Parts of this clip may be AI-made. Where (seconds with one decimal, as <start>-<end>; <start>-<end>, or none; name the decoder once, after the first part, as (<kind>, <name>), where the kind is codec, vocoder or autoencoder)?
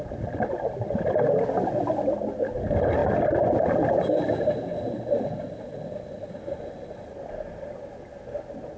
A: none